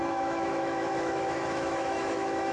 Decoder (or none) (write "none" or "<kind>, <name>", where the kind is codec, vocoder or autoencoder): autoencoder, DAC-VAE